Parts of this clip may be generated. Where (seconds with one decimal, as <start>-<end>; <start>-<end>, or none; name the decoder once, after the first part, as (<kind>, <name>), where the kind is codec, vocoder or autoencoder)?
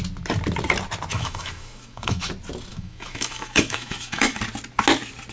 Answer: 1.1-2.3 (autoencoder, DAC-VAE); 2.7-4.4